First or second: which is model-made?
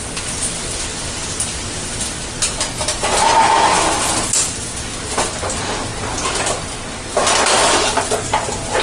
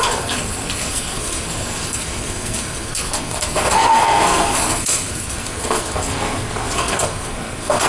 second